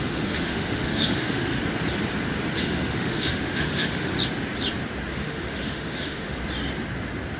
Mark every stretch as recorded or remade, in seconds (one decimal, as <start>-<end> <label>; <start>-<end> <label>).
0.0-1.6 remade; 1.6-2.6 recorded; 2.6-4.1 remade; 4.1-5.1 recorded; 5.1-6.4 remade; 6.4-7.4 recorded